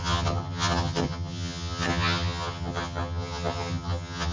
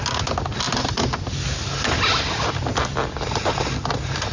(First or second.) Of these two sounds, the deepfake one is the first